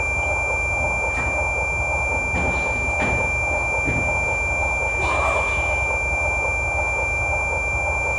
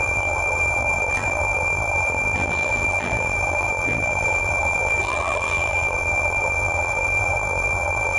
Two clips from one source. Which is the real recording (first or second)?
first